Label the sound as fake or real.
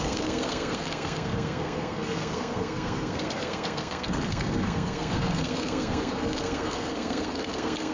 fake